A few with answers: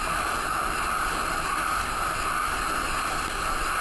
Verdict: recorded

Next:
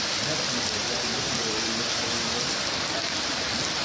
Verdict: recorded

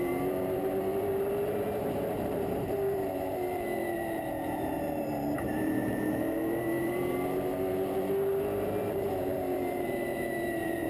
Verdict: remade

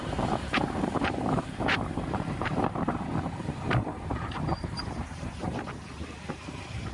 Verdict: remade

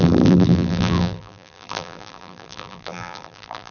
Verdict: remade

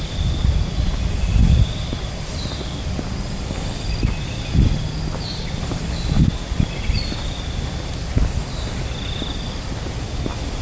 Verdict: recorded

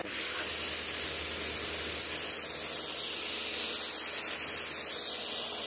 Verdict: recorded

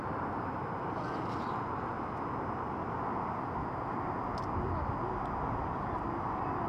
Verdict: recorded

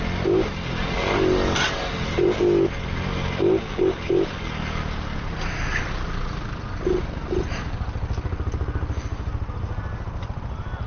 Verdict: recorded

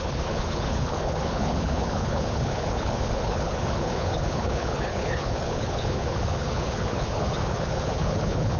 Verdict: remade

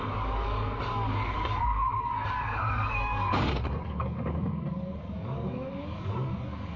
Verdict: remade